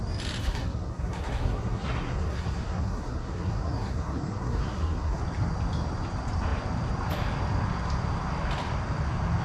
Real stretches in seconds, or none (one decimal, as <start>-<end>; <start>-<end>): 0.0-0.4; 5.2-9.4